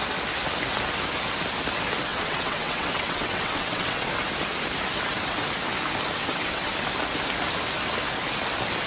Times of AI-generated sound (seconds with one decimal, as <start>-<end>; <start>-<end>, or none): 2.1-4.1; 6.2-6.7